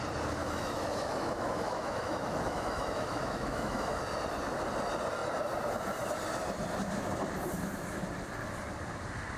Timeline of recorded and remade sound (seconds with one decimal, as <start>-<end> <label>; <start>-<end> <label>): 0.0-0.4 recorded; 0.4-4.0 remade; 4.0-9.4 recorded